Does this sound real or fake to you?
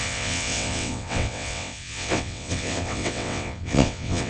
fake